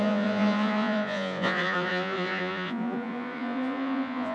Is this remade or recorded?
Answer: remade